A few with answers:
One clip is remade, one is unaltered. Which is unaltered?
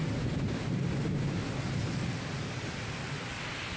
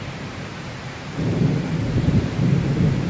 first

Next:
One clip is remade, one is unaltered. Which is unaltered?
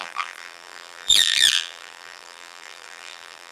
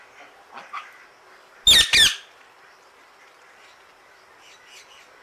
second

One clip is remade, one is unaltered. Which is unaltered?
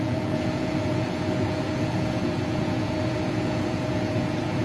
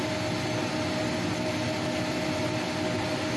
second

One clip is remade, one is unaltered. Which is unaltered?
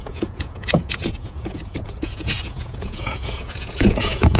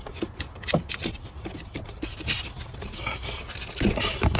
second